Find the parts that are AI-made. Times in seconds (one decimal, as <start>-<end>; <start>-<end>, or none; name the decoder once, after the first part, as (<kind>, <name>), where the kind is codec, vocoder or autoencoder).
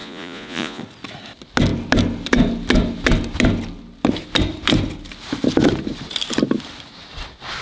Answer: 0.0-0.8 (vocoder, Vocos)